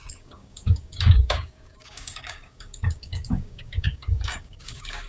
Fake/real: fake